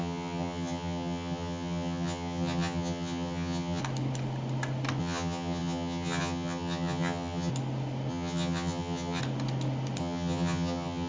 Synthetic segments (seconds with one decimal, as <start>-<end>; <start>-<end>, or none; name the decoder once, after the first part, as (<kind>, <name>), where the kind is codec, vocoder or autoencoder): 0.0-3.8 (vocoder, HiFi-GAN); 5.0-7.5; 8.1-9.2; 10.0-11.1